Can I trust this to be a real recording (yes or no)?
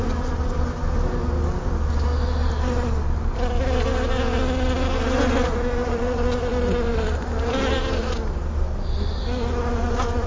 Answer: yes